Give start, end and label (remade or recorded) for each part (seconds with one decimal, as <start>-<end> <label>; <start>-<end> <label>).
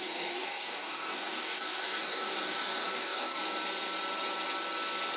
0.0-3.4 remade; 3.4-5.2 recorded